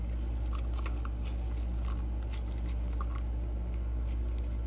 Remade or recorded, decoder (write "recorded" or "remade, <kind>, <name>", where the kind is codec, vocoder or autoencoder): recorded